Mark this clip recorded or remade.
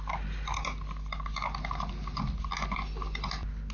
recorded